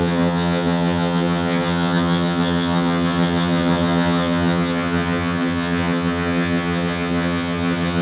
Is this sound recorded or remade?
remade